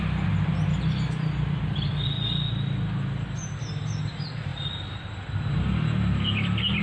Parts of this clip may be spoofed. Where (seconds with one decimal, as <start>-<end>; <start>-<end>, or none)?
none